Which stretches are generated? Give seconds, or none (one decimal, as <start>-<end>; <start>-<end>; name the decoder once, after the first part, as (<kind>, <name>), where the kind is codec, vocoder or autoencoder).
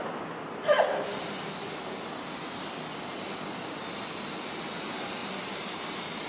none